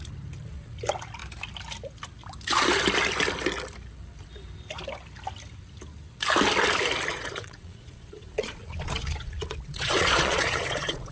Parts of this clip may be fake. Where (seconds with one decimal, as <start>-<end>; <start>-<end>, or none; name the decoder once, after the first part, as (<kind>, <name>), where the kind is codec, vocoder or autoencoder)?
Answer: 7.1-11.1 (vocoder, Vocos)